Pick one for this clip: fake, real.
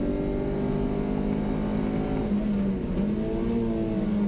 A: real